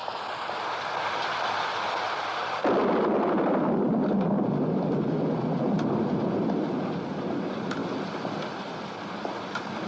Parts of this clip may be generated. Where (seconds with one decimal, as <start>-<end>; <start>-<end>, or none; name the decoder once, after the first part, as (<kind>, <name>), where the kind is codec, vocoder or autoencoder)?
none